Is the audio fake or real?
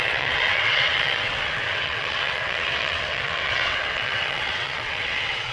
fake